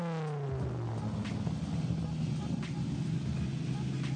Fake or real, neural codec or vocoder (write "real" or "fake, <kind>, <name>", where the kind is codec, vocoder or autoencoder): real